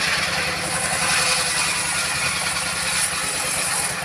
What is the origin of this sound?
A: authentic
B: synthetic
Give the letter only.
A